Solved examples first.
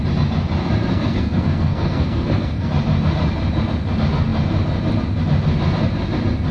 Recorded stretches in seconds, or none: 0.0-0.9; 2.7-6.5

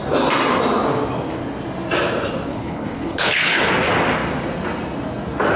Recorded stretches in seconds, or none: 0.0-2.5; 3.7-5.6

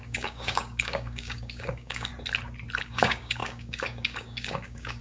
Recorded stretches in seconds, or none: 2.1-2.8

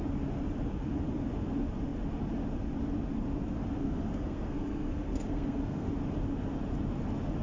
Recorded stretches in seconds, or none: 0.0-3.8; 5.9-7.4